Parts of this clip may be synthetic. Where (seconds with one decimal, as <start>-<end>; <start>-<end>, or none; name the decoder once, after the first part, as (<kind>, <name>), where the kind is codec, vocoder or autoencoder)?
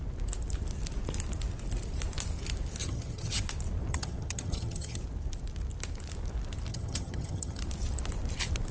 2.8-3.4 (vocoder, HiFi-GAN); 3.9-5.0; 6.7-7.6